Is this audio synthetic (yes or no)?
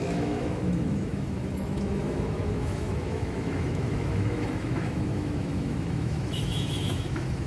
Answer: yes